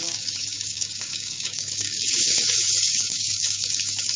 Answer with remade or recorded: remade